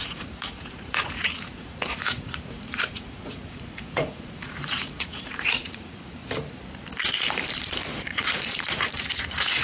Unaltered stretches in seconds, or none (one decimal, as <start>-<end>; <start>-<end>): 6.2-7.6